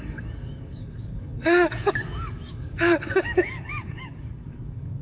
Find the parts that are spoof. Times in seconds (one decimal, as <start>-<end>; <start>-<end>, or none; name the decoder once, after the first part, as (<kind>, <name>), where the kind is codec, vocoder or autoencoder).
0.0-5.0 (codec, DAC)